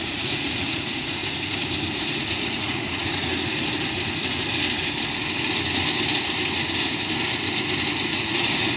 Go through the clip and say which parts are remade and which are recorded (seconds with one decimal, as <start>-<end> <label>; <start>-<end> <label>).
0.0-1.2 remade; 1.2-2.1 recorded; 2.1-3.3 remade; 3.3-8.0 recorded; 8.0-8.8 remade